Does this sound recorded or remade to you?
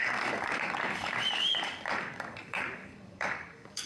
remade